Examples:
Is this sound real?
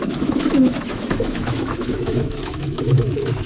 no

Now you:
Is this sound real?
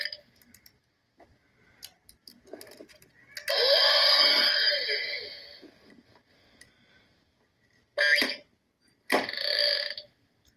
yes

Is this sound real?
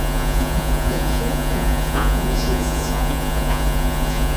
no